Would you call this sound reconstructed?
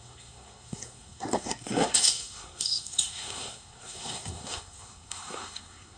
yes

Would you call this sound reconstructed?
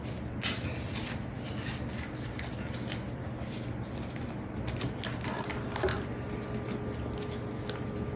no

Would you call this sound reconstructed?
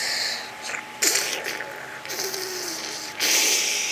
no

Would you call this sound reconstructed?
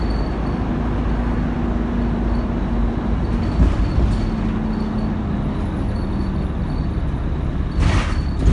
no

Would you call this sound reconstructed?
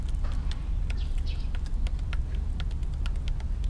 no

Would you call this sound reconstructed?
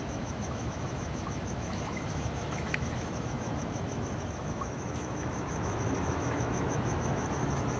yes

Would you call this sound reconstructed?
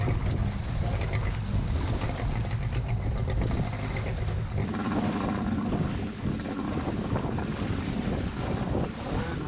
no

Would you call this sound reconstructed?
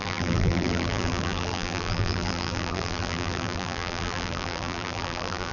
yes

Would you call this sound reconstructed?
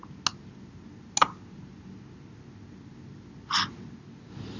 no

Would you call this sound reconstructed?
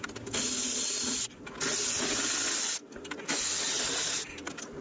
no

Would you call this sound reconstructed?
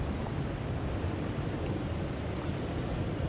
no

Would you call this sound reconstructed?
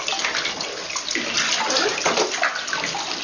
no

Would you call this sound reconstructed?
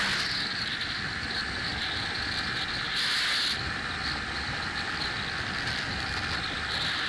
no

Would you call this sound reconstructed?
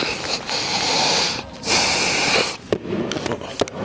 no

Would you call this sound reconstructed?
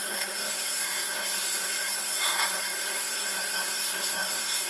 yes